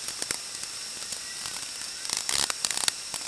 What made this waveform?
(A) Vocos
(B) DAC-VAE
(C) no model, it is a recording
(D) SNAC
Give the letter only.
C